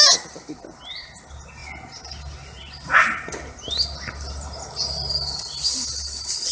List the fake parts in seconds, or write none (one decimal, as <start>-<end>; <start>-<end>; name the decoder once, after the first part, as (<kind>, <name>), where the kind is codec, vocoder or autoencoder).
none